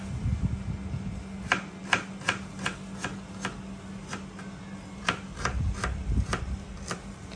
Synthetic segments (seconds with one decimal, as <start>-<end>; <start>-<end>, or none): none